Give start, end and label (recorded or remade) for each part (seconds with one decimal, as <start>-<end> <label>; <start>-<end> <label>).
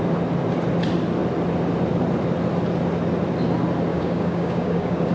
0.0-3.9 recorded; 3.9-5.1 remade